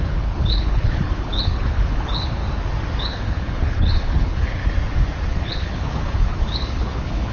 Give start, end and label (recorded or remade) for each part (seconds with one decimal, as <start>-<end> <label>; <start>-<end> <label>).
0.0-2.4 remade; 2.4-3.0 recorded; 3.0-4.6 remade; 4.6-5.3 recorded; 5.3-7.3 remade